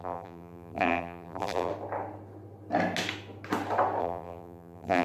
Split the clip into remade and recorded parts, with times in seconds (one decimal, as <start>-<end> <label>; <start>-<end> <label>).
0.0-1.7 remade; 1.7-4.0 recorded; 4.0-5.0 remade